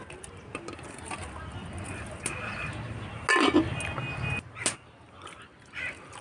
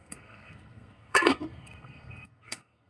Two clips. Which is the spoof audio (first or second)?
second